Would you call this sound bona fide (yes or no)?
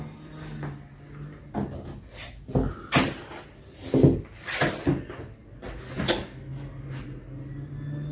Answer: yes